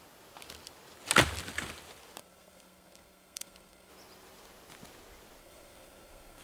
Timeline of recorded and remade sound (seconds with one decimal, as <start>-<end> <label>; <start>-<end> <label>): 0.0-2.2 recorded; 2.2-3.9 remade; 3.9-5.4 recorded; 5.4-6.4 remade